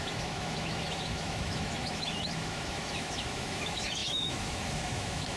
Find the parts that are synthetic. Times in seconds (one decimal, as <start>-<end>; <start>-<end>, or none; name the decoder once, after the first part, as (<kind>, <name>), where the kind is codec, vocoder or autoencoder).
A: 0.0-5.4 (autoencoder, DAC-VAE)